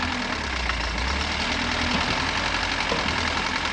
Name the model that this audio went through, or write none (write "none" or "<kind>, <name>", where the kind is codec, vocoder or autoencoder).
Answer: none